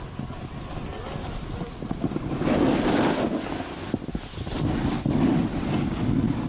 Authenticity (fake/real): real